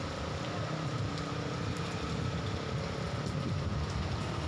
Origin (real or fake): real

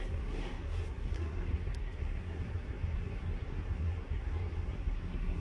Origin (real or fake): fake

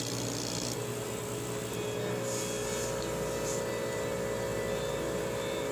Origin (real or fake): real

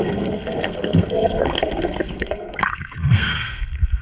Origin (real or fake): fake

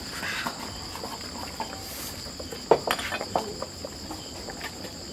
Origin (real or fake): real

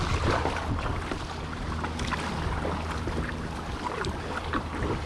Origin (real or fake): real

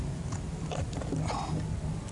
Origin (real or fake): real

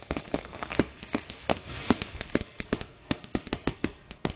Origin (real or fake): fake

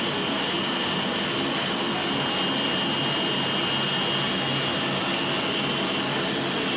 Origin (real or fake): real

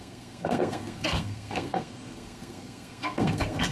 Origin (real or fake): fake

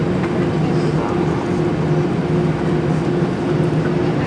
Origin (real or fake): real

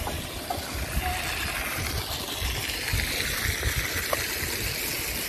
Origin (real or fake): real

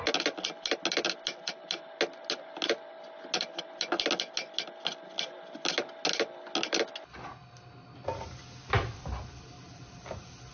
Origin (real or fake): real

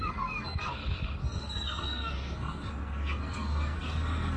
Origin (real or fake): fake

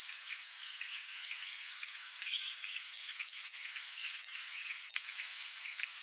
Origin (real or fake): fake